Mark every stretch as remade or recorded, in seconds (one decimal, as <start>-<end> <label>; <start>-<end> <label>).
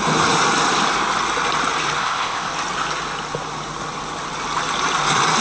0.0-2.0 recorded; 2.0-2.5 remade; 2.5-5.4 recorded